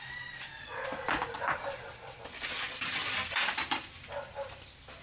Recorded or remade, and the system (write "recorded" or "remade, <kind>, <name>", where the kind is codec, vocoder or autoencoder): remade, vocoder, BigVGAN v2